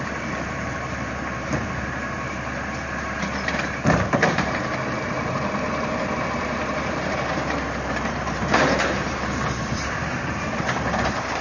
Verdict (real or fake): fake